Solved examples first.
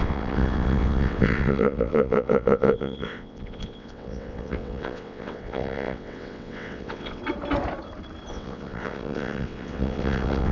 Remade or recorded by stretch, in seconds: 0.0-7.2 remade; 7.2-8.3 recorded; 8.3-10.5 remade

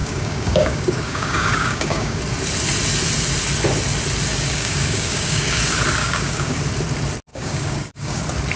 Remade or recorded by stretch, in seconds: 0.0-2.2 remade; 2.2-4.3 recorded; 4.3-5.6 remade; 5.6-6.0 recorded; 6.0-6.6 remade; 6.6-7.3 recorded; 7.3-8.2 remade; 8.2-8.6 recorded

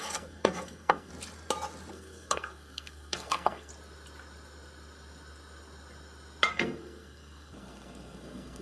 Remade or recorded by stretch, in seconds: 0.0-1.1 remade; 1.1-1.9 recorded; 1.9-3.7 remade; 3.7-6.5 recorded; 6.5-8.6 remade